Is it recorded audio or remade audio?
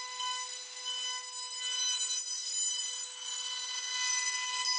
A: recorded